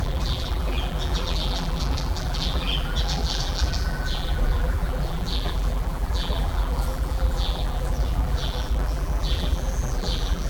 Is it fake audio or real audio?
fake